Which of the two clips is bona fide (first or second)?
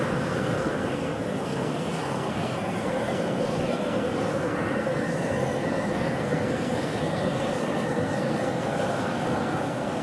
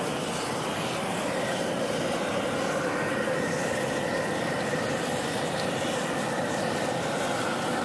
second